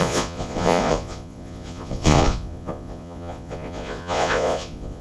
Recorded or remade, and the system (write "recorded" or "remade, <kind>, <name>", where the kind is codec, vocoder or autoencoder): remade, vocoder, Vocos